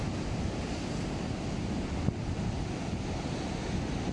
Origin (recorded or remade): recorded